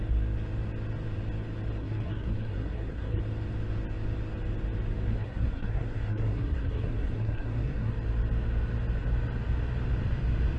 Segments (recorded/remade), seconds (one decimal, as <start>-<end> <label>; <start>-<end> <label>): 0.0-1.8 recorded; 1.8-3.2 remade; 3.2-5.1 recorded; 5.1-7.9 remade; 7.9-10.6 recorded